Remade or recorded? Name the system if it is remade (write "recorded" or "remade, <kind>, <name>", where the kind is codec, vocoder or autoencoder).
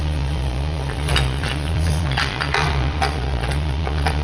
remade, vocoder, Vocos